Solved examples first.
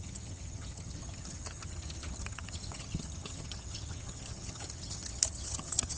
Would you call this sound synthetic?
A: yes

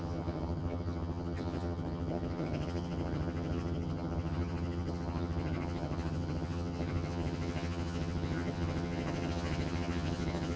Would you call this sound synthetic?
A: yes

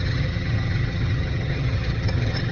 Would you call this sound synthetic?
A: yes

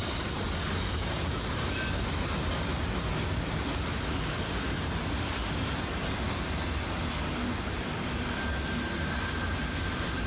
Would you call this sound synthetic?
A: no